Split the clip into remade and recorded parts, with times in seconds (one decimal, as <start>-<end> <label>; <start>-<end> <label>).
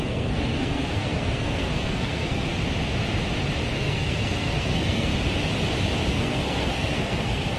0.0-2.5 remade; 2.5-3.7 recorded; 3.7-5.1 remade; 5.1-6.1 recorded; 6.1-7.6 remade